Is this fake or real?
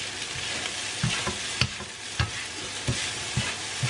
real